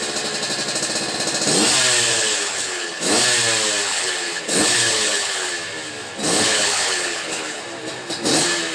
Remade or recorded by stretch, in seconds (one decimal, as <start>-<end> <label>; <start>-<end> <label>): 0.0-2.1 recorded; 2.1-3.0 remade; 3.0-3.9 recorded; 3.9-5.5 remade; 5.5-6.3 recorded; 6.3-7.6 remade; 7.6-8.7 recorded